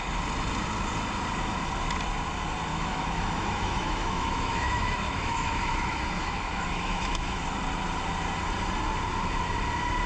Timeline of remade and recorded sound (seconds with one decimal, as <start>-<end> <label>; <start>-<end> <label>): 0.0-2.7 recorded; 2.7-7.6 remade; 7.6-10.1 recorded